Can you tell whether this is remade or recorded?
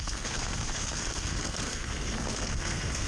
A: remade